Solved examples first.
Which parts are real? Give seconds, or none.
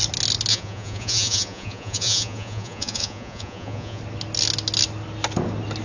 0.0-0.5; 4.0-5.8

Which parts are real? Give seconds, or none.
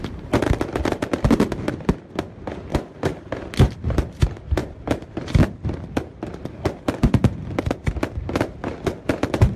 0.0-2.7; 3.3-9.6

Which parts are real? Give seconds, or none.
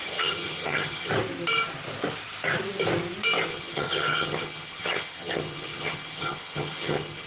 1.1-3.5